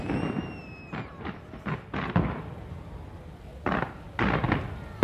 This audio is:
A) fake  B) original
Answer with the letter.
B